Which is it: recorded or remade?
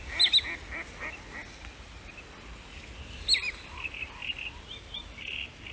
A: recorded